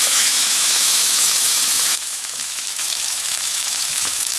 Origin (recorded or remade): remade